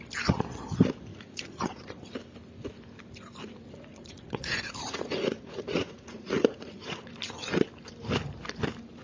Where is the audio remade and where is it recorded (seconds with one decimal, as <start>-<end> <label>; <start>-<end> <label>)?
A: 0.0-1.1 recorded; 1.1-1.9 remade; 1.9-3.9 recorded; 3.9-7.1 remade; 7.1-9.0 recorded